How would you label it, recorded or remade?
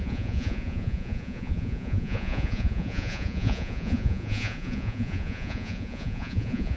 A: remade